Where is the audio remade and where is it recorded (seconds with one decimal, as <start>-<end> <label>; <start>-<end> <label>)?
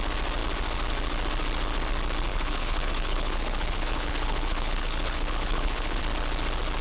0.0-2.3 recorded; 2.3-6.0 remade; 6.0-6.8 recorded